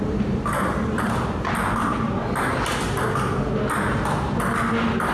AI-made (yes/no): no